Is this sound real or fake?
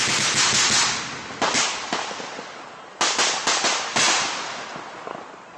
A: real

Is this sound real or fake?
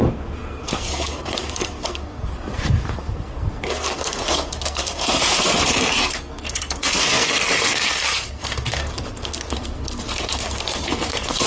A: fake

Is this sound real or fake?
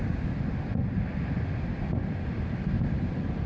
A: real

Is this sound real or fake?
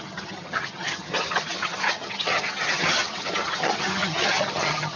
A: fake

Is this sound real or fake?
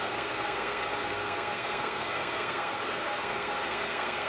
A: fake